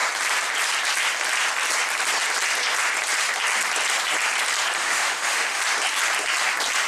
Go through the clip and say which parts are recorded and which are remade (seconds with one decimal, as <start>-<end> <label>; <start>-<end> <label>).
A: 0.0-4.8 recorded; 4.8-5.6 remade; 5.6-6.9 recorded